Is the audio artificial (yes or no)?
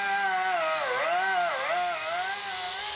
no